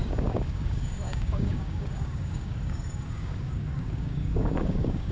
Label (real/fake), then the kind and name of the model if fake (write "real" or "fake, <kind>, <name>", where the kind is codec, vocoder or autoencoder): fake, codec, DAC